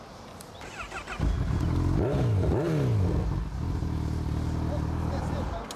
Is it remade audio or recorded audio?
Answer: recorded